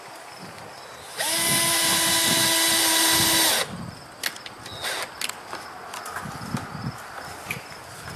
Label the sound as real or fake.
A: real